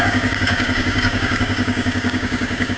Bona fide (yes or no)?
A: no